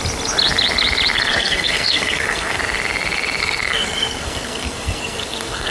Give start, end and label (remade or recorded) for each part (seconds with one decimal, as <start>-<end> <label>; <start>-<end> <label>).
0.0-1.3 recorded; 1.3-2.6 remade; 2.6-3.4 recorded; 3.4-5.7 remade